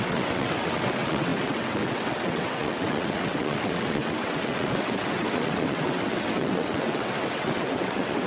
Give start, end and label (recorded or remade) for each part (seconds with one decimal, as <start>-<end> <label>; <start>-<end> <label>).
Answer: 0.0-8.3 remade